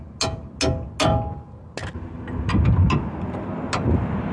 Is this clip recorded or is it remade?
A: recorded